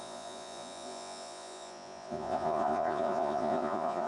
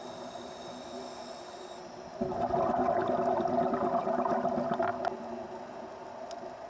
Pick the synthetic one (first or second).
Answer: first